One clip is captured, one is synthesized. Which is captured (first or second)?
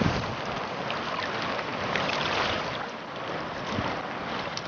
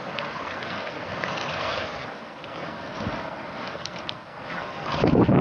first